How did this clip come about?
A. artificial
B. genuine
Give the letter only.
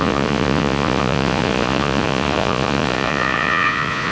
A